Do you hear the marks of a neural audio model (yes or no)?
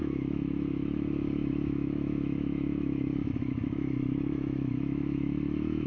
yes